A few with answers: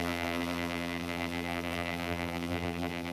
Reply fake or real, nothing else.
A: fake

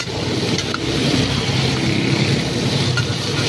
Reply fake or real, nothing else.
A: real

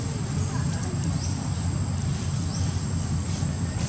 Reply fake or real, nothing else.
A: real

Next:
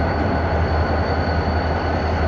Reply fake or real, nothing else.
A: real